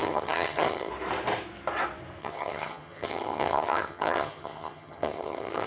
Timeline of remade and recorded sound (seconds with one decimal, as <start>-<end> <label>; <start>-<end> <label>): 0.0-0.9 remade; 0.9-2.2 recorded; 2.2-5.7 remade